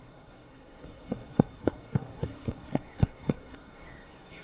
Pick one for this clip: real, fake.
fake